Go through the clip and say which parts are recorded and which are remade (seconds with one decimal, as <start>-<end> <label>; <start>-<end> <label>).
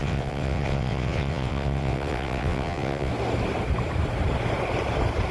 0.0-3.1 remade; 3.1-5.3 recorded